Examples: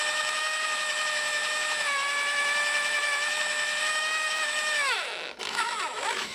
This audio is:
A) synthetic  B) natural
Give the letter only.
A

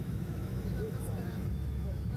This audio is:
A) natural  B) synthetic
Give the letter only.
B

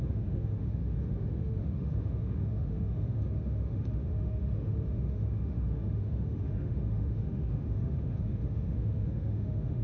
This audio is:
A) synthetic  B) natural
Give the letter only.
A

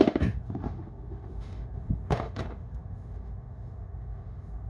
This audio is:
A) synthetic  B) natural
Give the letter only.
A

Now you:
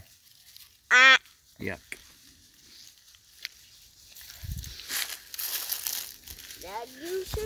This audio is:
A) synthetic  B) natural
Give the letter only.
B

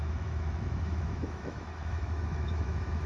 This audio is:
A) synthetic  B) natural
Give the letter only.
A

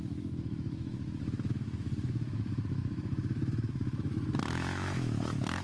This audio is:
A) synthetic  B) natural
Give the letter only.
A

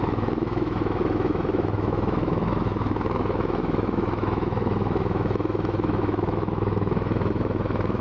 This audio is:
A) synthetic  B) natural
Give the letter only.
A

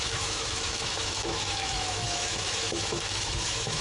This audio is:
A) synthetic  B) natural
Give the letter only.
A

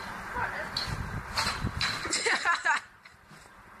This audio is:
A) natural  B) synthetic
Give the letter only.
A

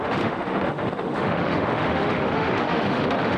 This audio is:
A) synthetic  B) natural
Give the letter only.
A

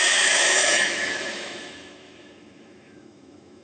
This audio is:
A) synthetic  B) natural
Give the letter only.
A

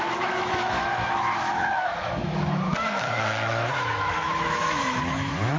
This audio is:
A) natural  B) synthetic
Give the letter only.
B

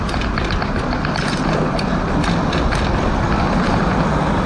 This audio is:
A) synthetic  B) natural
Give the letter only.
B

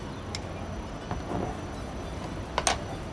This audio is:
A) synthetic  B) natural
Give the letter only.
B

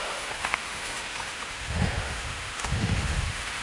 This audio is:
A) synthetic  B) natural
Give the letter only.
A